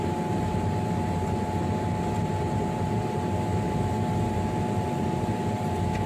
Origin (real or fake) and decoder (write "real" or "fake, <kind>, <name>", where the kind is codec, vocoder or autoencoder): real